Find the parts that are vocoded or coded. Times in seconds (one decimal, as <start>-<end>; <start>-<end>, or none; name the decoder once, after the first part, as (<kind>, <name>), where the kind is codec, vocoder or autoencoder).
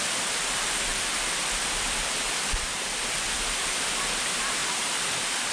0.0-5.5 (vocoder, BigVGAN v2)